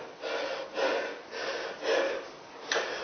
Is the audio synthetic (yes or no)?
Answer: no